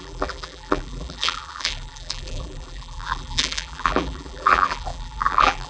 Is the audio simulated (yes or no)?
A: yes